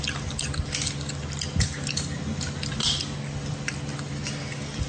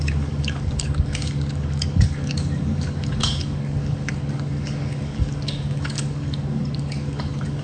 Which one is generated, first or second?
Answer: second